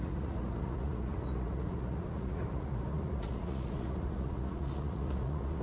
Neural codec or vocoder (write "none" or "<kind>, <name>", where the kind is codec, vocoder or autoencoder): vocoder, Vocos